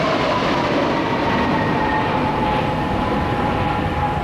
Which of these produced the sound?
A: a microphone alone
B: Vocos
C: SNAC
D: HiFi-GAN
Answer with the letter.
A